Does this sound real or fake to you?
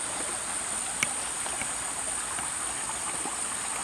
real